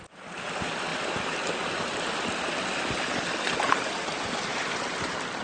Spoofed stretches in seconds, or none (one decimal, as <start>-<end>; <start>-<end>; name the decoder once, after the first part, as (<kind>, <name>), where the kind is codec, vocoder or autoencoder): none